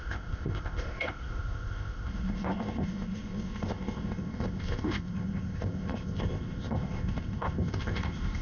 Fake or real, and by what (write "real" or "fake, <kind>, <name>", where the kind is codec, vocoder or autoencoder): fake, codec, ZipCodec